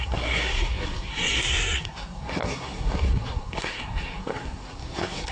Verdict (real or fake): fake